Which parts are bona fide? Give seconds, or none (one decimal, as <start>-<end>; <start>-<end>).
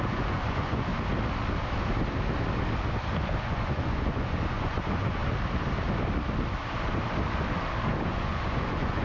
0.9-3.4; 5.2-8.1